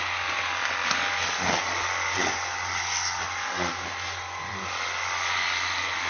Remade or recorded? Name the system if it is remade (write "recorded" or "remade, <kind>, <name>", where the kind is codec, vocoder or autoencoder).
recorded